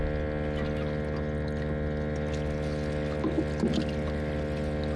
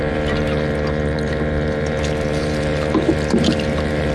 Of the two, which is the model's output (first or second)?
second